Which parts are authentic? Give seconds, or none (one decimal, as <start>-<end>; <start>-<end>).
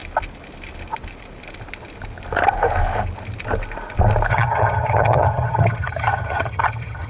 0.0-4.3